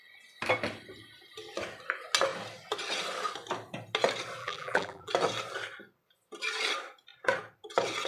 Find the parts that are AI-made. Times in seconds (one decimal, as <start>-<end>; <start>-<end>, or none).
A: 4.4-5.1